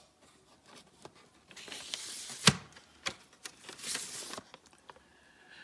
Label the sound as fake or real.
real